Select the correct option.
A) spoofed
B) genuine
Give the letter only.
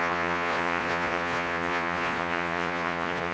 A